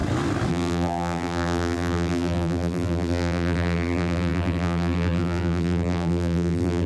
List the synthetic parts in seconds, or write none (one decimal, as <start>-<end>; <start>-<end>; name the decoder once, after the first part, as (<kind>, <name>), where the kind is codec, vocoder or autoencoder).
0.5-6.9 (vocoder, BigVGAN v2)